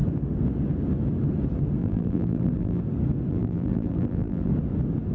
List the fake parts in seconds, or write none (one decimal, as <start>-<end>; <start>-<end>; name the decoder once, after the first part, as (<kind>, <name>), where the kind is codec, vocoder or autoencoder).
1.8-2.8 (vocoder, BigVGAN v2); 3.3-4.5